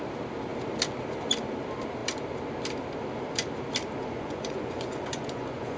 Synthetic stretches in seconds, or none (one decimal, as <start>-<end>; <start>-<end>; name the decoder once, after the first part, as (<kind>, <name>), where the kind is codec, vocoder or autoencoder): 4.0-5.8 (vocoder, Vocos)